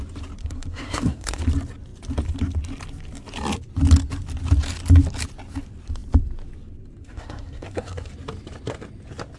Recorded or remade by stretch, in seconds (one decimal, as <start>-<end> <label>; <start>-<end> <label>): 0.0-0.4 recorded; 0.4-1.4 remade; 1.4-7.0 recorded; 7.0-8.1 remade; 8.1-9.4 recorded